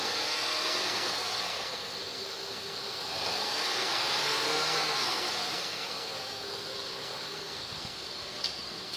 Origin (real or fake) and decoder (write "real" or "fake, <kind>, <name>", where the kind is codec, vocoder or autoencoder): fake, codec, SNAC